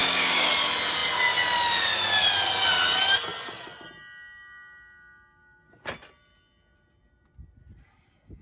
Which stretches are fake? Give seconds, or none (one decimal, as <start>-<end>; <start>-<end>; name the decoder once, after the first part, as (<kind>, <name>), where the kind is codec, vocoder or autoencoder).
0.0-0.5 (codec, DAC)